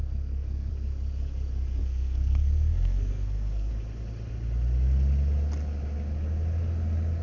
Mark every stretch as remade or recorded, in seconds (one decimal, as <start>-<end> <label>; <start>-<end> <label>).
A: 0.0-0.7 remade; 0.7-1.8 recorded; 1.8-3.7 remade; 3.7-7.2 recorded